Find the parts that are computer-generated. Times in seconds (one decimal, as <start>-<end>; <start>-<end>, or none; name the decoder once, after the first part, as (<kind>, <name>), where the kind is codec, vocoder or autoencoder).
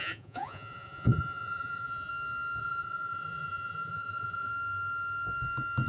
0.0-2.1 (vocoder, Vocos); 2.6-4.5